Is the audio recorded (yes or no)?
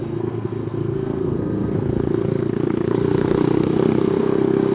no